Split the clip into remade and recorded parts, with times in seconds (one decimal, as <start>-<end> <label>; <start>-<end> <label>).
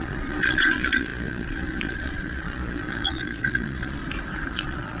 0.0-4.0 remade; 4.0-4.5 recorded; 4.5-5.0 remade